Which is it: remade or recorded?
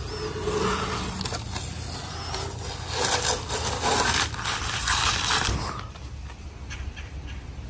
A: recorded